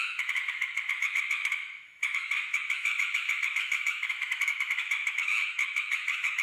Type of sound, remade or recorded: remade